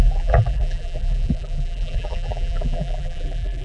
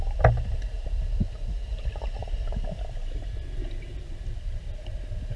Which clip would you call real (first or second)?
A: second